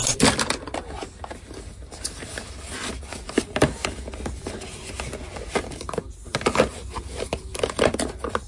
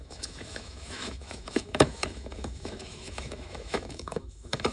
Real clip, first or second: first